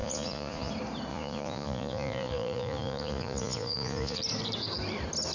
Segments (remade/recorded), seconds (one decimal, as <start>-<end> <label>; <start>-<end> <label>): 0.0-0.7 remade; 0.7-1.1 recorded; 1.1-4.2 remade; 4.2-5.3 recorded

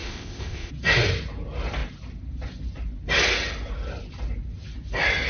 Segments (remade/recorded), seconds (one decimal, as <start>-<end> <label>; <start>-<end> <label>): 0.0-0.7 remade; 0.7-5.3 recorded

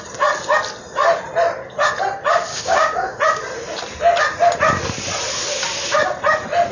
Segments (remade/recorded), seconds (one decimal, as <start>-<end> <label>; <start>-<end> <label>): 0.0-2.5 recorded; 2.5-3.2 remade; 3.2-6.7 recorded